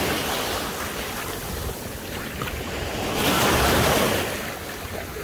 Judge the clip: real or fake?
real